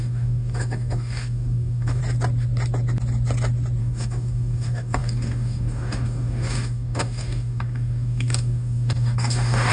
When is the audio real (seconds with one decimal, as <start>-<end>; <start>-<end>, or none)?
2.0-3.8